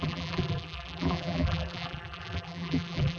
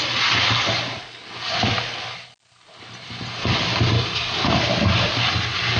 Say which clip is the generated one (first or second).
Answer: first